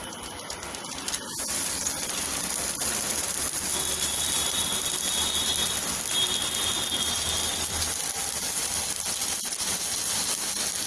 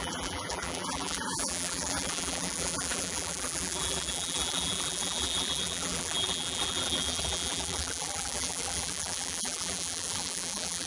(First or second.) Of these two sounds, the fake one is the second